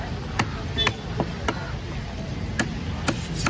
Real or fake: real